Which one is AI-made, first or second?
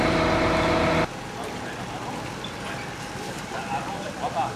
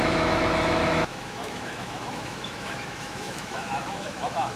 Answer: second